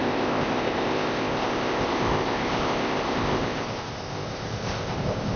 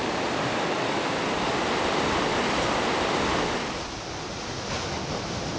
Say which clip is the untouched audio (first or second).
second